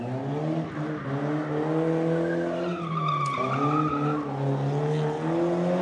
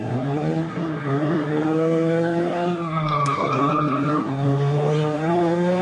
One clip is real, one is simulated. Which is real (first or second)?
first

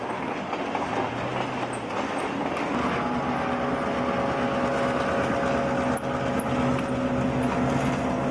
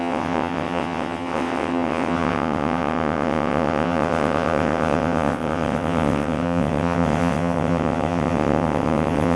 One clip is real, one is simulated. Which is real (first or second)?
first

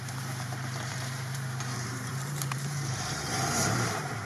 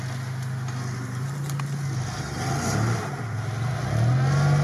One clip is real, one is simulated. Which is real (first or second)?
second